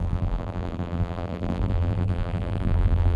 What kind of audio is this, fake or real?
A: fake